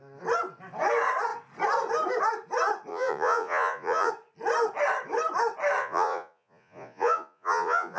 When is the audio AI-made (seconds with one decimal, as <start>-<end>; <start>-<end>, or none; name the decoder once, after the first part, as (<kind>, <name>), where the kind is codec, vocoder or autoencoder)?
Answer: 2.9-4.1 (vocoder, Vocos); 5.8-8.0